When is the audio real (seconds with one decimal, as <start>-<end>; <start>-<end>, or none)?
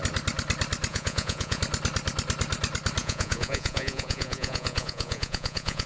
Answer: 0.0-0.9; 1.6-3.0